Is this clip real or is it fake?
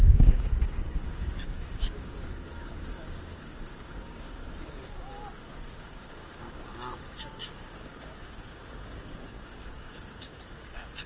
fake